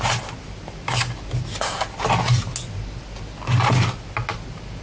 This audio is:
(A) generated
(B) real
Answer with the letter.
B